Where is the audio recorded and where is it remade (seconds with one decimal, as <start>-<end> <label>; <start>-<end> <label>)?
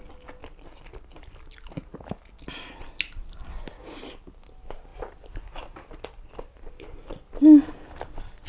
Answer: 0.0-0.4 recorded; 0.4-2.0 remade; 2.0-4.9 recorded; 4.9-7.4 remade; 7.4-8.5 recorded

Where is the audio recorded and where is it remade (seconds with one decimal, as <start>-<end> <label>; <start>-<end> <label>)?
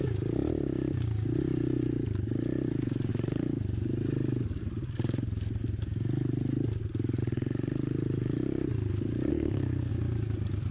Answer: 0.0-9.3 recorded; 9.3-9.9 remade; 9.9-10.7 recorded